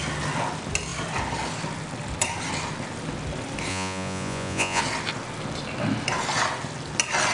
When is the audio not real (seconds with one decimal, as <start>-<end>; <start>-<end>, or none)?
3.7-4.8